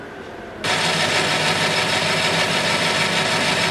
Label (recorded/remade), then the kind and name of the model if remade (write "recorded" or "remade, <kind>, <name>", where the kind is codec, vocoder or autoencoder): recorded